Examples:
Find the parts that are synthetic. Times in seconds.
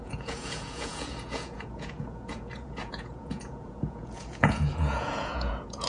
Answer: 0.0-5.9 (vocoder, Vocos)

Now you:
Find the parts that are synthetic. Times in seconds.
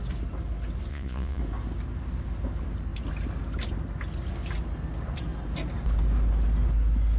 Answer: 0.9-1.4 (vocoder, Vocos)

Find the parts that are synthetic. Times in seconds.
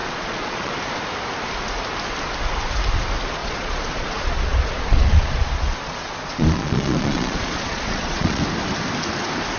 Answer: 0.0-0.7 (vocoder, Vocos); 3.4-8.4